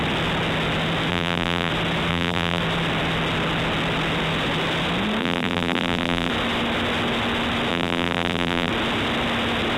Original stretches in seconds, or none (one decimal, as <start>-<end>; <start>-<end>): 0.0-1.1; 1.7-2.1; 2.6-5.2; 6.3-7.7; 8.7-9.8